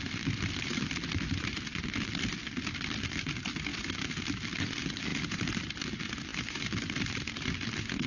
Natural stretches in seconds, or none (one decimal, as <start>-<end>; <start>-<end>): 0.0-3.7; 4.2-5.1; 5.6-6.3; 7.5-8.1